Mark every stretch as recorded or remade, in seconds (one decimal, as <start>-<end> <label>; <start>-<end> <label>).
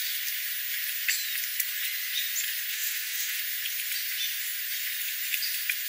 0.0-2.7 recorded; 2.7-3.4 remade; 3.4-5.9 recorded